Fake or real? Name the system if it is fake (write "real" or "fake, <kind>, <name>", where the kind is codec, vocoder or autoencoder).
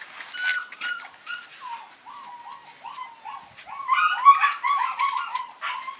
real